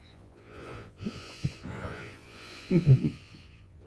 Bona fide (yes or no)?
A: no